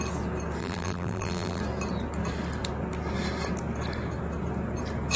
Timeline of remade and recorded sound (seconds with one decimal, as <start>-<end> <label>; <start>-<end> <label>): 0.0-0.6 recorded; 0.6-1.6 remade; 1.6-5.2 recorded